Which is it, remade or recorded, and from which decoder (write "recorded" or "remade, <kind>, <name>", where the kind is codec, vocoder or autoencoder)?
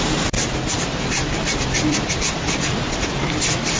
recorded